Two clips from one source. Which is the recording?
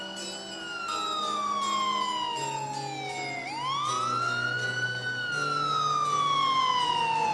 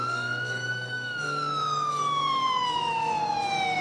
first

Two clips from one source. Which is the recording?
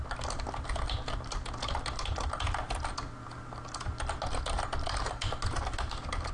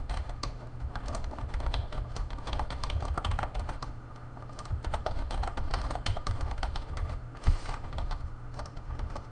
first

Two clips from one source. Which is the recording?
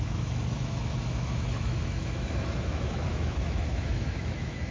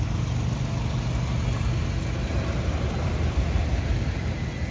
second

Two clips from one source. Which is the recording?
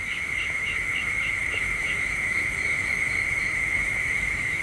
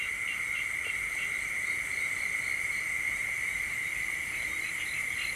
second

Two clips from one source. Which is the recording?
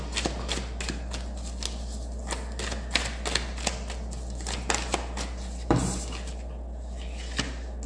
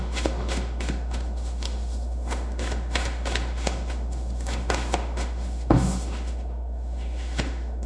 first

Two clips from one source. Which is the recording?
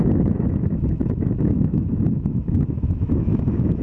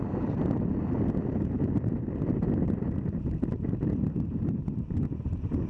second